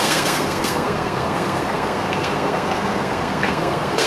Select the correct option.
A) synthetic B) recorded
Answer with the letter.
A